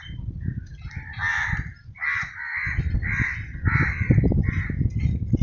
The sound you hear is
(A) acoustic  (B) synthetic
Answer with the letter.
A